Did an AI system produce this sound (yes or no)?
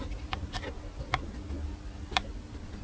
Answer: no